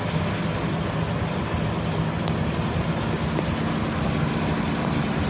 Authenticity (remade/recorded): recorded